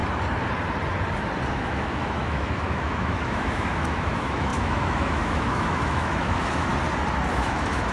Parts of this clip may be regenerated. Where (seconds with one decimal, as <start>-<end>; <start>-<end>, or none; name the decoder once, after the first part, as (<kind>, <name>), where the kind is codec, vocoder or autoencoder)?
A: 1.5-6.7 (autoencoder, DAC-VAE); 7.3-7.9